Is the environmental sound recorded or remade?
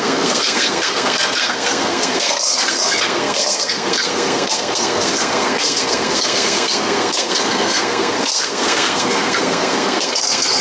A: remade